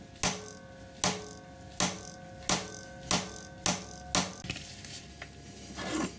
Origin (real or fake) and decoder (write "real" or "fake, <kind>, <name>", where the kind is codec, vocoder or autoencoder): real